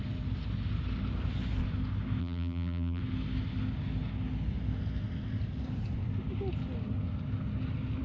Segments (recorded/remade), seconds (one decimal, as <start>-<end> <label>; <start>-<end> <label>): 0.0-2.2 recorded; 2.2-3.0 remade; 3.0-8.0 recorded

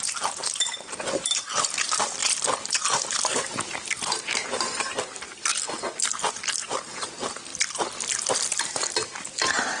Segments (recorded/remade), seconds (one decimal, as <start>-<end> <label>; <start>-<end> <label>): 0.0-2.2 remade; 2.2-2.7 recorded; 2.7-5.5 remade; 5.5-6.6 recorded; 6.6-7.5 remade; 7.5-8.6 recorded; 8.6-9.8 remade